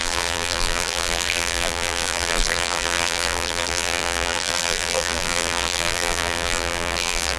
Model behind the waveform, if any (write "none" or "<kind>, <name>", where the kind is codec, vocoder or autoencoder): vocoder, BigVGAN v2